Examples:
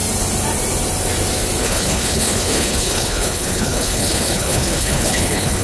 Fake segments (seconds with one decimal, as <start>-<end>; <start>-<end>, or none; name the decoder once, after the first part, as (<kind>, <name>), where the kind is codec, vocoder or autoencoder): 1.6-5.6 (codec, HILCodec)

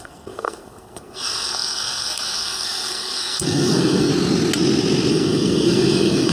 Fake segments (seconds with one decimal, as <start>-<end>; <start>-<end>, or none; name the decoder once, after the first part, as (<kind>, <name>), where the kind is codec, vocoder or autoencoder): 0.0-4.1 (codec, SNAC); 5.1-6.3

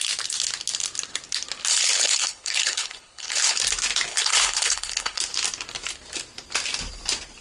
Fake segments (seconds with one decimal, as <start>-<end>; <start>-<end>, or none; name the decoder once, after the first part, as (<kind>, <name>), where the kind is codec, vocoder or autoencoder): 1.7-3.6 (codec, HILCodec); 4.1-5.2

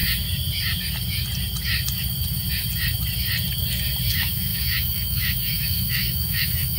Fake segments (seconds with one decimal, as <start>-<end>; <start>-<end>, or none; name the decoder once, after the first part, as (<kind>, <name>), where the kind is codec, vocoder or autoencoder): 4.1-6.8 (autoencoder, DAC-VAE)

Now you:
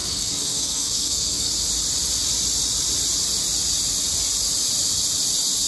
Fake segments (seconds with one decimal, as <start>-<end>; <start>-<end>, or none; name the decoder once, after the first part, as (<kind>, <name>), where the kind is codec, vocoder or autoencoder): 0.0-1.5 (codec, SNAC)